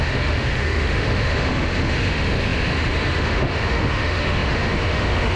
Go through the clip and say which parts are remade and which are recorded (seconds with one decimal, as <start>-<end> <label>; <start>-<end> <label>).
0.0-5.4 remade